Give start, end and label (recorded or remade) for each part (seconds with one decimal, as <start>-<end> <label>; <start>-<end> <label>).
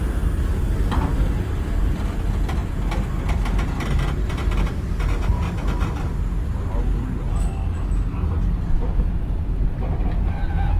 0.0-10.8 recorded